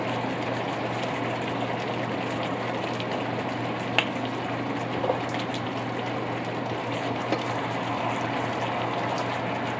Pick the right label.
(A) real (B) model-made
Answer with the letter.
A